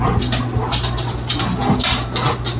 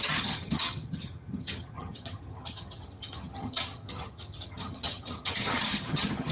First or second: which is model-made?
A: second